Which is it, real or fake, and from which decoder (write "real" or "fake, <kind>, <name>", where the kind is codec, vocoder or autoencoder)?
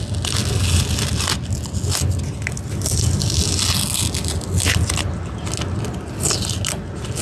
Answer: real